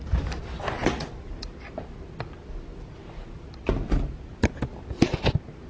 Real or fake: real